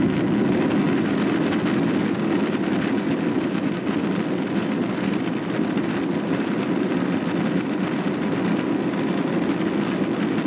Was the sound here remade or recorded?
recorded